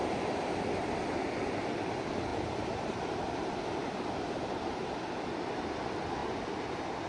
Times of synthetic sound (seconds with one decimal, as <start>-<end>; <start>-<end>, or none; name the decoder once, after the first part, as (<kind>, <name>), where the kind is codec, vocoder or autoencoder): 0.0-1.9 (vocoder, BigVGAN v2); 2.3-5.2